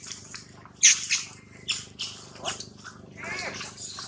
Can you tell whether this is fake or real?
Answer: real